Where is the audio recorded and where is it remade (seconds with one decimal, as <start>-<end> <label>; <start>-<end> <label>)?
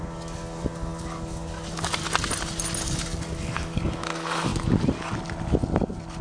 0.0-2.0 remade; 2.0-2.8 recorded; 2.8-4.5 remade; 4.5-6.2 recorded